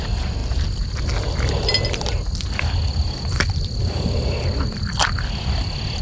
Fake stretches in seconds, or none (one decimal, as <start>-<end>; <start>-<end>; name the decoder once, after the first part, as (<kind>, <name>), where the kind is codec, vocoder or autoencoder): none

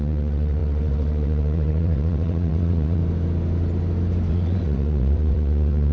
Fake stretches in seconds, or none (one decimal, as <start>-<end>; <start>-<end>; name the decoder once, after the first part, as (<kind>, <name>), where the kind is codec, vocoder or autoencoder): 0.0-3.0 (vocoder, WaveNeXt); 4.3-5.9

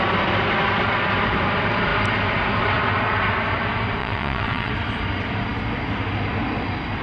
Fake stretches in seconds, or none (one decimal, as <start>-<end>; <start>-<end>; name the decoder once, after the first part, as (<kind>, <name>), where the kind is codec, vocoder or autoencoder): 4.0-4.7 (vocoder, WaveNeXt)

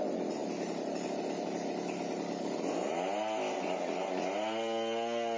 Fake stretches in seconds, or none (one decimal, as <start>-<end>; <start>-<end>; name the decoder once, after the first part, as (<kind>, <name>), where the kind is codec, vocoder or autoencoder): none

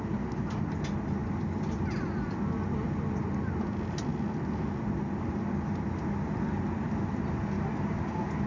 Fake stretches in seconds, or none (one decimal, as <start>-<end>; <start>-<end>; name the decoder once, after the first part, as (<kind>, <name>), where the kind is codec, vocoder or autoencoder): none

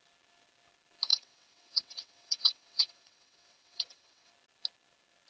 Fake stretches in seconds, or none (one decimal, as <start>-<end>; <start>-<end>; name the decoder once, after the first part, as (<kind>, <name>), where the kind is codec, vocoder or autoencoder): 1.1-4.3 (vocoder, WaveNeXt)

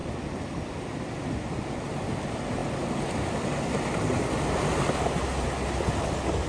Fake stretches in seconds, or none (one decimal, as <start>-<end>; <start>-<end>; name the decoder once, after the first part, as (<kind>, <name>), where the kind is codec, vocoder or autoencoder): none

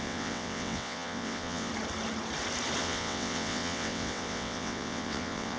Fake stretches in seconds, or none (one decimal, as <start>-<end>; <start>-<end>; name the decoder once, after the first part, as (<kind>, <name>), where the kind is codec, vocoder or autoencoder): 0.0-1.7 (vocoder, WaveNeXt); 2.8-5.6